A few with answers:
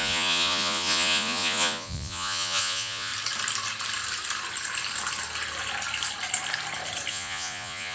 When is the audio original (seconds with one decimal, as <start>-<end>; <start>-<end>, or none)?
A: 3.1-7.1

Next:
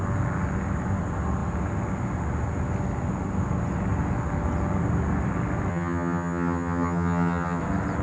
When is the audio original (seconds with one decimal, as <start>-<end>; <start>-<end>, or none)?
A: 0.0-5.7; 7.6-8.0

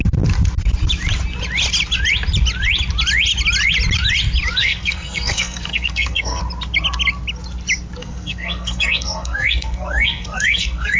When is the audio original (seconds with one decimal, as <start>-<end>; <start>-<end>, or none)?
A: 0.0-4.6; 6.4-8.0

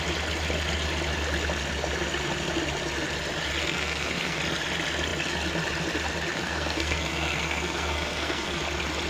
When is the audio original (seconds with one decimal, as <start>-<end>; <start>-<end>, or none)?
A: 0.0-3.6; 4.4-6.3; 8.6-9.1

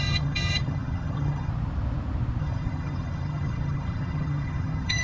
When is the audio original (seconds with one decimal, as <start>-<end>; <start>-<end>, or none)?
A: 1.5-2.4

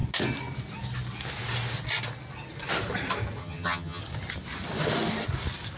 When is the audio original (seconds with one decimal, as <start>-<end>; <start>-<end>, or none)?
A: 0.0-3.4; 4.0-5.8

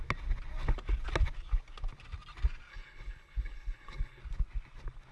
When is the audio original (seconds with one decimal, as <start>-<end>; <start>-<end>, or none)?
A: 0.0-2.7; 4.2-5.1